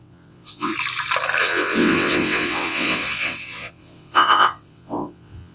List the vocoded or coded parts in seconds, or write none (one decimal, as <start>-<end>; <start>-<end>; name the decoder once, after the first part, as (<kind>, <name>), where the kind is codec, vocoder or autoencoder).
0.0-0.7 (vocoder, WaveNeXt); 1.4-5.5